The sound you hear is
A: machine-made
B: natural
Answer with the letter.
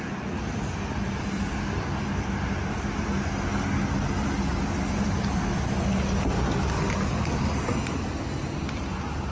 B